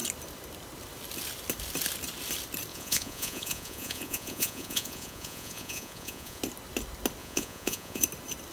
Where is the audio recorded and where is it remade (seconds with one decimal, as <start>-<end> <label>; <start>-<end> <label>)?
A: 0.0-2.7 recorded; 2.7-6.4 remade; 6.4-7.2 recorded; 7.2-8.0 remade; 8.0-8.5 recorded